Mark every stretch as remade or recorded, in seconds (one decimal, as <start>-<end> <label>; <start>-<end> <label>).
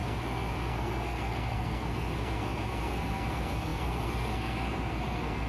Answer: 0.0-5.5 remade